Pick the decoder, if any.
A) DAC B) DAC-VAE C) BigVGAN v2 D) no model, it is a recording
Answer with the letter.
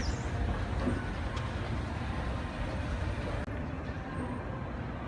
D